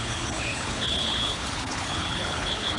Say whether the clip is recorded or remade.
remade